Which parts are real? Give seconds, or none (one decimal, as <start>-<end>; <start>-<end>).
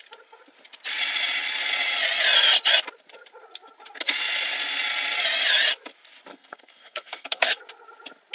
0.0-6.3; 7.6-8.3